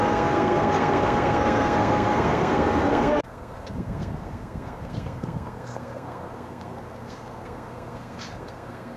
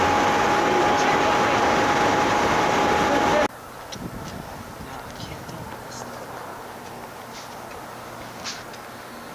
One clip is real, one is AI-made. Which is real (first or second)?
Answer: second